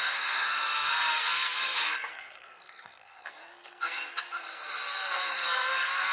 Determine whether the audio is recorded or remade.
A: remade